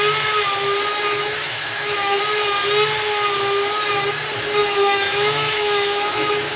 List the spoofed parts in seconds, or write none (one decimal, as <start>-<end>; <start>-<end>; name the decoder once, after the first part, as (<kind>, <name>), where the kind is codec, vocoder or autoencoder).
0.9-2.2 (autoencoder, DAC-VAE); 4.6-6.6